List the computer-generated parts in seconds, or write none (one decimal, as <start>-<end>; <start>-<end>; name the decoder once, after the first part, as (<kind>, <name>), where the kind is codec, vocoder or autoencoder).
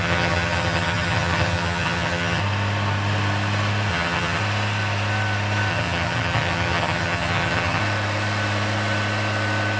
0.0-2.4 (vocoder, HiFi-GAN); 3.9-4.4; 5.7-7.8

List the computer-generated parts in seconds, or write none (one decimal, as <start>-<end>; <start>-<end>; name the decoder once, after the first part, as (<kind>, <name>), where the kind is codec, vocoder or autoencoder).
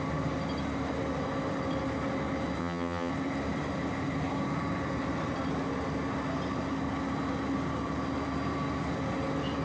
2.6-3.1 (vocoder, HiFi-GAN)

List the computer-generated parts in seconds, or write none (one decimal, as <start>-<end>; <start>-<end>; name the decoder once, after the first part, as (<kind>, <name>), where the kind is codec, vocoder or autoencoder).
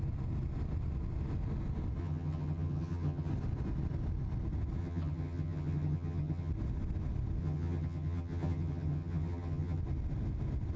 2.0-3.3 (vocoder, HiFi-GAN); 4.8-6.5; 7.4-9.8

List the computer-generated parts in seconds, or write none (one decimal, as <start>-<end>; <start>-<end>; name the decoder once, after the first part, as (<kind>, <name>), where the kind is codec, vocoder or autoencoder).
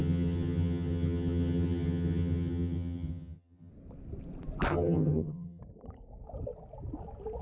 0.0-3.7 (vocoder, HiFi-GAN); 4.7-5.6